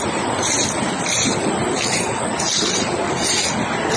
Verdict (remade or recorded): recorded